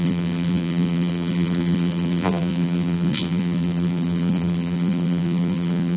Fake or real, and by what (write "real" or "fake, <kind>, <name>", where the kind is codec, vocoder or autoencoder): fake, vocoder, BigVGAN v2